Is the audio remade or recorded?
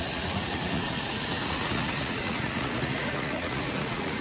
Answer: remade